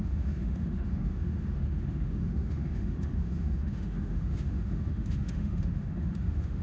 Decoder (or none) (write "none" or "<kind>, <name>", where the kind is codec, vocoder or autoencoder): autoencoder, DAC-VAE